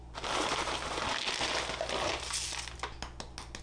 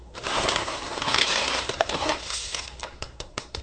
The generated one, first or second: second